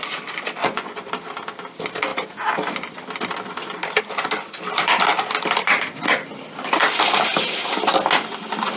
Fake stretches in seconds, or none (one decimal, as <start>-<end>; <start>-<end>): 0.6-1.1